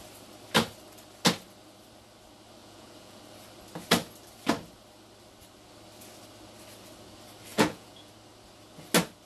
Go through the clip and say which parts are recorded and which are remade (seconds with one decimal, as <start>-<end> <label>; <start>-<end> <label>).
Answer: 0.0-2.6 recorded; 2.6-3.2 remade; 3.2-7.5 recorded; 7.5-8.1 remade; 8.1-9.3 recorded

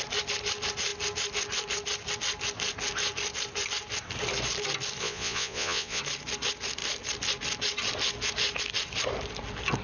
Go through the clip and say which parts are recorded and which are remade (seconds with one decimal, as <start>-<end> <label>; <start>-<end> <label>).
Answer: 0.0-5.0 recorded; 5.0-6.0 remade; 6.0-9.8 recorded